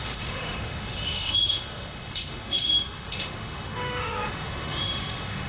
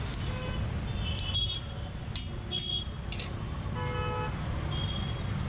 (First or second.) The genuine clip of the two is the second